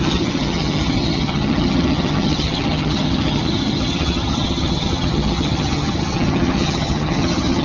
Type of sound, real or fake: fake